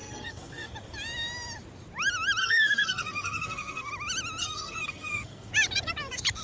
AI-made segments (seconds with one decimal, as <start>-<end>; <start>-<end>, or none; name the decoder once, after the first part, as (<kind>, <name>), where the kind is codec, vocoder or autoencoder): 0.0-0.7 (codec, SNAC); 2.4-3.9; 4.4-5.5